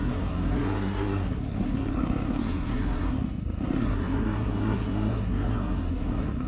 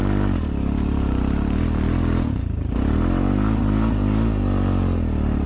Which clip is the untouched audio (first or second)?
second